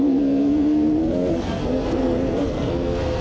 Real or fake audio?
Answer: fake